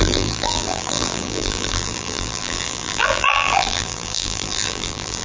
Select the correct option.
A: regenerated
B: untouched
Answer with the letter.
A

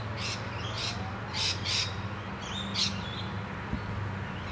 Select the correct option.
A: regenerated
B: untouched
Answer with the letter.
B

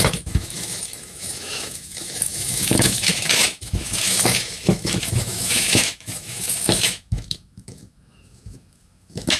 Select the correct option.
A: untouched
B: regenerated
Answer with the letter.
B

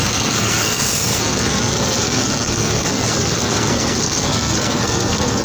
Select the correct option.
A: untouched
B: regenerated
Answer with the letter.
B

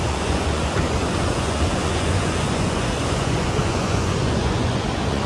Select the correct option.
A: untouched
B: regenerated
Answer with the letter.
B